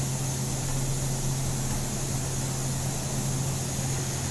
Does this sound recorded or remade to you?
recorded